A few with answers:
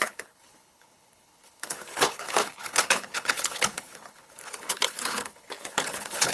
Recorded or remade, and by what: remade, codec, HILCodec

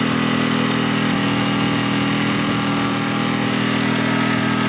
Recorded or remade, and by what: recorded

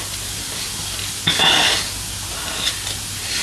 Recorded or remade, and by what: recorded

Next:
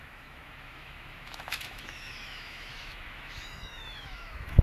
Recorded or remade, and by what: remade, autoencoder, DAC-VAE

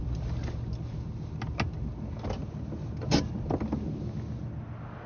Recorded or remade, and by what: recorded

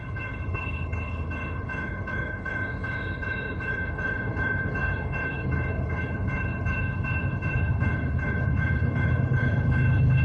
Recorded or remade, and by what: remade, codec, HILCodec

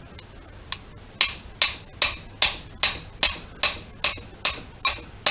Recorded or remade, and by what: recorded